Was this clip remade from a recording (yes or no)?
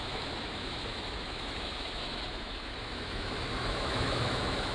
yes